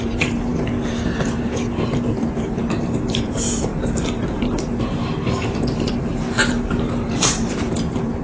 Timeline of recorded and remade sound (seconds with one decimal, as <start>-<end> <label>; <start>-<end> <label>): 0.0-8.2 remade